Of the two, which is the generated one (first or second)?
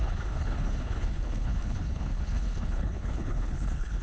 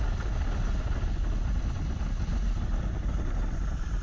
first